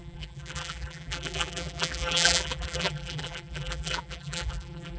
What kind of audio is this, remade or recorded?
remade